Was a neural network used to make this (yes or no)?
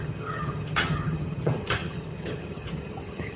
yes